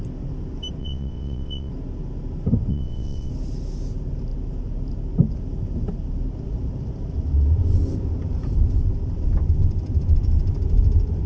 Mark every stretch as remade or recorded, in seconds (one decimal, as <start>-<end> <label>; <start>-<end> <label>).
0.0-0.8 recorded; 0.8-1.7 remade; 1.7-2.7 recorded; 2.7-3.3 remade; 3.3-11.3 recorded